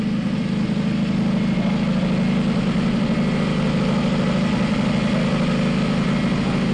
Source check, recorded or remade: recorded